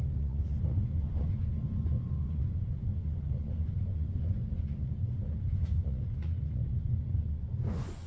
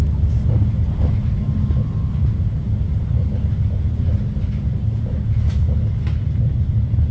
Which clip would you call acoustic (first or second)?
second